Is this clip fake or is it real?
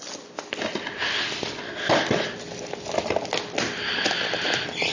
real